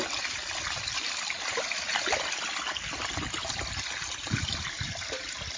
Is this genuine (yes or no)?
no